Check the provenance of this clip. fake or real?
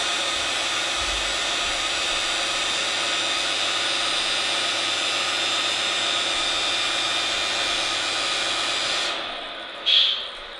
real